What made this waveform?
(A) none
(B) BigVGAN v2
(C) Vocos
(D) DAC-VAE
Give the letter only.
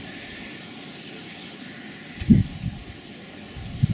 A